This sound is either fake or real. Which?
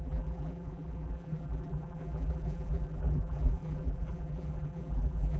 fake